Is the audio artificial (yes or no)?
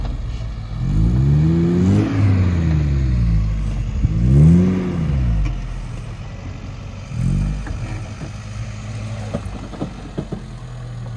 no